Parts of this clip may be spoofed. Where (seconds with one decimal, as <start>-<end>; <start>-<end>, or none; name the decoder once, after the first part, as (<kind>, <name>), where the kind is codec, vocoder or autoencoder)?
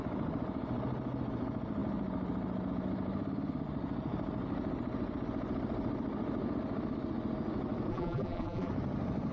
7.9-8.7 (vocoder, BigVGAN v2)